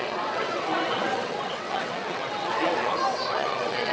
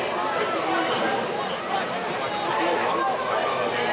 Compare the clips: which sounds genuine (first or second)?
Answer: second